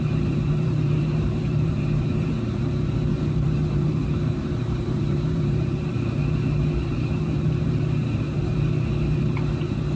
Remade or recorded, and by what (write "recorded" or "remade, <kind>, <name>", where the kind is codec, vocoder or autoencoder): remade, vocoder, BigVGAN v2